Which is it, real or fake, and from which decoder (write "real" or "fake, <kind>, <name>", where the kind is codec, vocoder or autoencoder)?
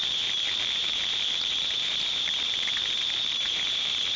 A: fake, vocoder, BigVGAN v2